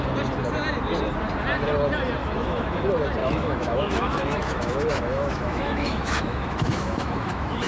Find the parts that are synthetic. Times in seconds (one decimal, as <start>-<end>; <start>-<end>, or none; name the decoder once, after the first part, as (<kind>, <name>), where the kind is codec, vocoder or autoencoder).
2.2-2.8 (autoencoder, DAC-VAE); 3.2-7.7